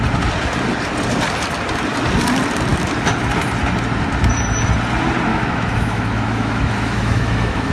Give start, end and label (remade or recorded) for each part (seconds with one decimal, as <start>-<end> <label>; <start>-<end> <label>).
0.0-5.3 recorded; 5.3-7.7 remade